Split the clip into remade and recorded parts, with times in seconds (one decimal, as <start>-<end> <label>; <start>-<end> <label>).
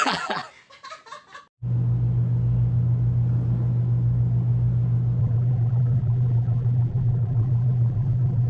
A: 0.0-0.4 remade; 0.4-5.2 recorded; 5.2-8.5 remade